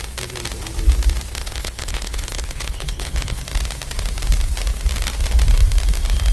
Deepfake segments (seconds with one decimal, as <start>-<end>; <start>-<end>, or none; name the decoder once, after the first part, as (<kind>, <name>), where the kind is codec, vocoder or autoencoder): 1.3-3.4 (codec, HILCodec)